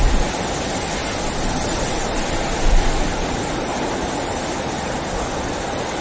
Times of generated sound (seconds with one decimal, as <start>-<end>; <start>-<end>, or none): none